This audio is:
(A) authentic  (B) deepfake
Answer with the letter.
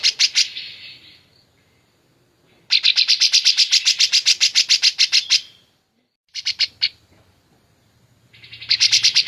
A